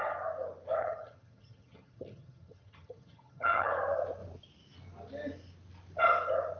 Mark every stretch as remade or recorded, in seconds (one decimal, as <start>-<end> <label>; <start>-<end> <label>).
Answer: 0.0-0.8 recorded; 0.8-3.7 remade; 3.7-6.6 recorded